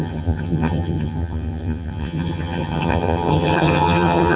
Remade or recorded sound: remade